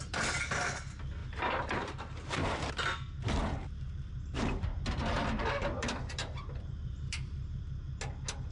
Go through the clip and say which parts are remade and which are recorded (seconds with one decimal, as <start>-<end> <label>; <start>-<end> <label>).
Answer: 0.0-1.2 recorded; 1.2-2.7 remade; 2.7-3.4 recorded; 3.4-7.6 remade; 7.6-8.5 recorded